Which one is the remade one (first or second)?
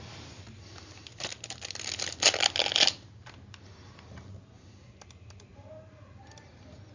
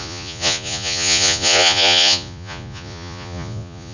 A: second